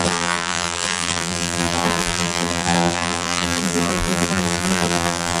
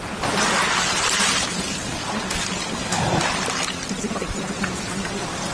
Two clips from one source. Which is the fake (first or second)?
first